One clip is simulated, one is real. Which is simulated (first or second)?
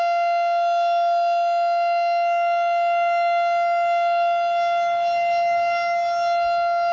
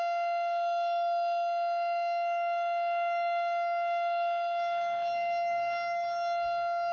second